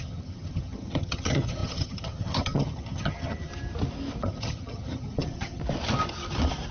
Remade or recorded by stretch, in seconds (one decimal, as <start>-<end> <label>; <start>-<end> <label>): 0.0-3.5 remade; 3.5-4.2 recorded; 4.2-5.6 remade; 5.6-6.7 recorded